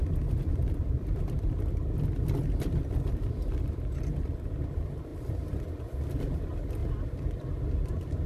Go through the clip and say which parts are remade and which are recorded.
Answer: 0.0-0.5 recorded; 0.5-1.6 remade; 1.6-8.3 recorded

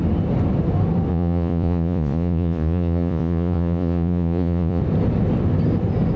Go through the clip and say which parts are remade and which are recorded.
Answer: 0.0-1.1 recorded; 1.1-4.8 remade; 4.8-6.2 recorded

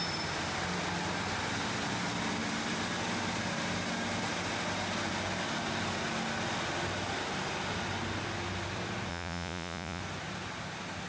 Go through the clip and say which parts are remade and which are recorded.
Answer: 0.0-9.1 recorded; 9.1-10.0 remade; 10.0-11.1 recorded

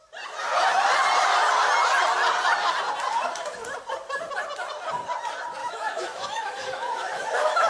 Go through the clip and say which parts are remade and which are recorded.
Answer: 0.0-5.6 recorded; 5.6-7.7 remade

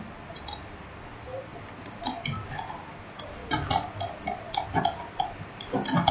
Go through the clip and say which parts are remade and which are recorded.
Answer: 0.0-6.1 recorded

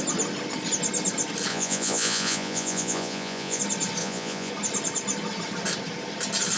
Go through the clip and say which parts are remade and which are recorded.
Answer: 0.0-1.5 recorded; 1.5-3.6 remade; 3.6-4.0 recorded; 4.0-4.5 remade; 4.5-6.6 recorded

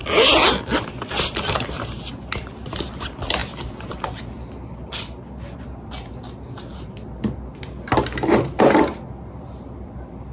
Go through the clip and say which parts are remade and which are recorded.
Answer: 0.0-10.3 recorded

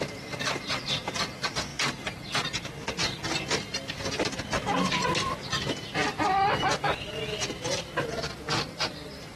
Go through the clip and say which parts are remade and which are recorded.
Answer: 0.0-1.7 remade; 1.7-3.5 recorded; 3.5-9.4 remade